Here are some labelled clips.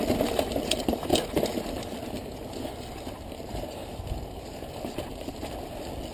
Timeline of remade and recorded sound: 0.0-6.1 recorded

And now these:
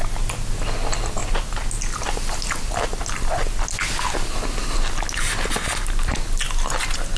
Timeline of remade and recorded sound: 0.0-7.2 recorded